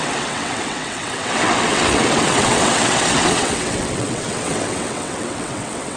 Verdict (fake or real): fake